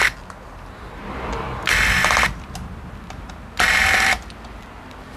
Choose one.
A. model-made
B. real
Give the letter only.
B